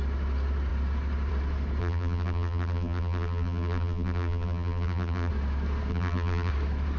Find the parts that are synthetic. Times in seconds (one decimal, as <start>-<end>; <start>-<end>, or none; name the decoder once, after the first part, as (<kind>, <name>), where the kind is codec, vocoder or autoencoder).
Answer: 1.8-5.3 (vocoder, BigVGAN v2); 5.9-6.5